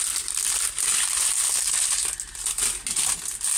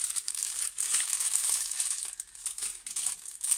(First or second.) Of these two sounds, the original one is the first